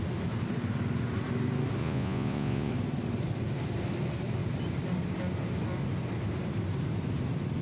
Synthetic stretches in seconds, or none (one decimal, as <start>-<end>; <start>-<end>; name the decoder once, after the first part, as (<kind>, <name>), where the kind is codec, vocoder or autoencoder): 1.8-2.7 (vocoder, Vocos)